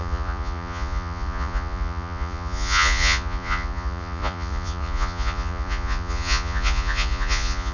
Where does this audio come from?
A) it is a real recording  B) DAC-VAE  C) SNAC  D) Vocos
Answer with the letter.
D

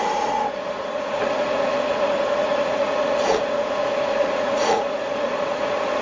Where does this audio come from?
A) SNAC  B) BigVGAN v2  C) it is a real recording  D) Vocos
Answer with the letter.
D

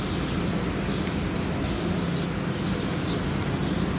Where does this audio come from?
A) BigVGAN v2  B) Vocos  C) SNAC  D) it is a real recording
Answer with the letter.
D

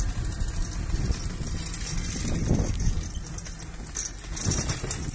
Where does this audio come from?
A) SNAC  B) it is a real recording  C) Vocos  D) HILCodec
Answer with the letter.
B